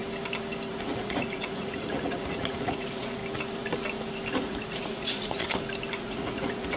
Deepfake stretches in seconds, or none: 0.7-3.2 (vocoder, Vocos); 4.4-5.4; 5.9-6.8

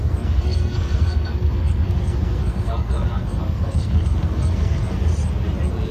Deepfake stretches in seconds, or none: 0.0-5.1 (codec, SNAC)